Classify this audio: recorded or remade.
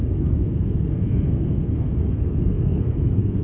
remade